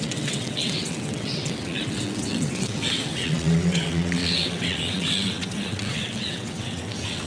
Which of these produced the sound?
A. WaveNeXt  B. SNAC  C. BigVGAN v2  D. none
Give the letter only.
A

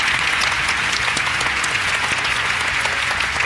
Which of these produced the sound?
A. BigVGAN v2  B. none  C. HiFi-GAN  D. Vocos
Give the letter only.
D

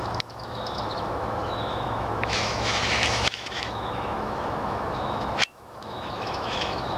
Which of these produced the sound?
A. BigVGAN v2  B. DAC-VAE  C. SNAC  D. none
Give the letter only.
B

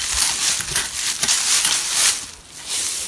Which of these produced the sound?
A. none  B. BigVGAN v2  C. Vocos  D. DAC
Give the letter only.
A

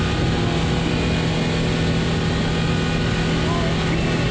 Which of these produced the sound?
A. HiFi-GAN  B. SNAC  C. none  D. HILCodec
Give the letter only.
C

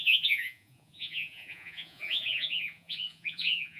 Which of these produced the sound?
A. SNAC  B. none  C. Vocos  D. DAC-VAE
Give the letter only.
C